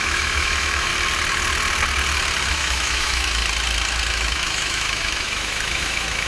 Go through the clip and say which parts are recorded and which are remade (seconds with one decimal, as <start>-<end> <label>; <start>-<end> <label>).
0.0-0.9 remade; 0.9-2.5 recorded; 2.5-3.4 remade; 3.4-4.1 recorded; 4.1-6.3 remade